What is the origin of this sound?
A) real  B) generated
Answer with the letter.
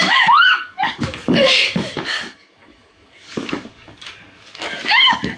B